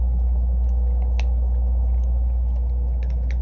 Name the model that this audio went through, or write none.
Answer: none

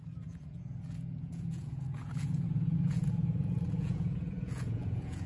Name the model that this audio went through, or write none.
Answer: vocoder, Vocos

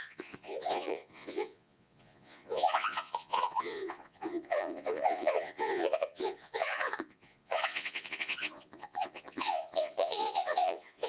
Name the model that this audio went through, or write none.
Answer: vocoder, Vocos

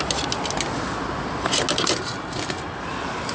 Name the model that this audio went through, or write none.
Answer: none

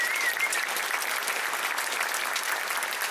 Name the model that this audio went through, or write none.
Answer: none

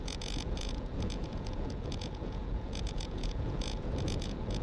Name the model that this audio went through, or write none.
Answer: vocoder, Vocos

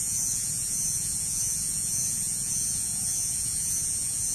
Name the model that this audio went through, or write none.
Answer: vocoder, Vocos